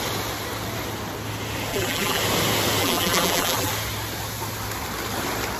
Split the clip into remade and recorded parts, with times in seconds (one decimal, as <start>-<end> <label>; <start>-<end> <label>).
0.0-1.7 recorded; 1.7-2.2 remade; 2.2-2.8 recorded; 2.8-3.7 remade; 3.7-5.6 recorded